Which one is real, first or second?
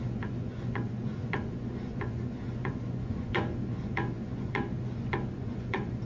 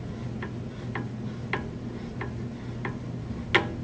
second